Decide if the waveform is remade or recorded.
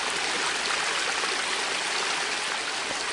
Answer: recorded